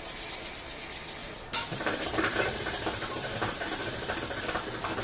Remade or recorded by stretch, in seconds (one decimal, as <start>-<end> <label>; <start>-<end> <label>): 0.0-1.2 recorded; 1.2-4.2 remade; 4.2-5.0 recorded